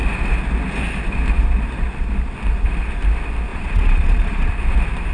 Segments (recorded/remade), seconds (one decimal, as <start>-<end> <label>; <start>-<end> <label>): 0.0-3.5 recorded; 3.5-4.5 remade; 4.5-5.1 recorded